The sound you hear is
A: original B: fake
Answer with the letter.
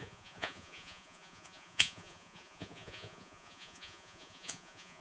B